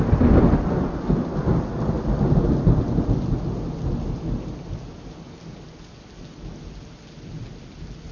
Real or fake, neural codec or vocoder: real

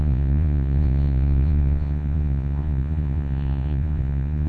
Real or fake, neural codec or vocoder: fake, vocoder, Vocos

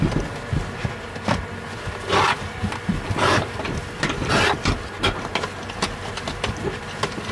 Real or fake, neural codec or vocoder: fake, vocoder, BigVGAN v2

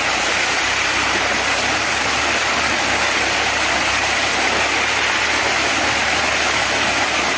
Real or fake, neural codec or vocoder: real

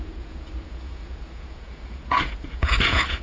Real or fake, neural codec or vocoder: fake, vocoder, Vocos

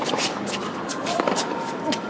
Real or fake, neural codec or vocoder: fake, codec, DAC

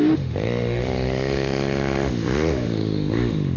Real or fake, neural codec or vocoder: fake, autoencoder, DAC-VAE